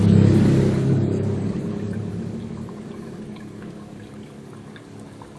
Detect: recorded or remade remade